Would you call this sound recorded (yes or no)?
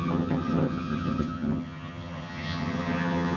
no